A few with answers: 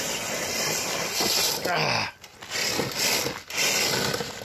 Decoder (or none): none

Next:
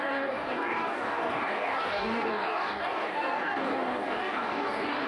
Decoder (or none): codec, DAC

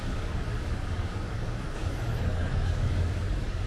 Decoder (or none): codec, DAC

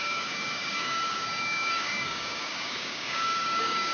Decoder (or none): codec, DAC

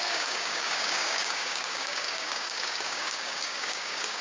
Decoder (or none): codec, DAC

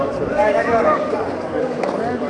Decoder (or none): codec, DAC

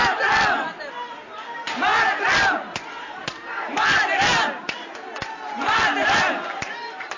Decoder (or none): none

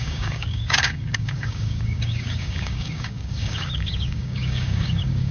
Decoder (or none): codec, DAC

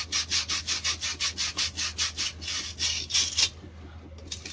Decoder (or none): none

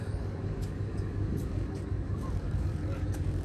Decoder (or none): codec, DAC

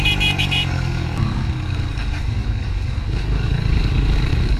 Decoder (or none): codec, DAC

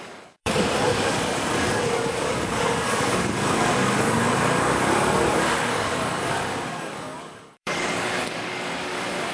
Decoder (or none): codec, DAC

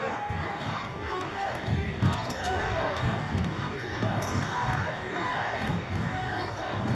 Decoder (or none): codec, DAC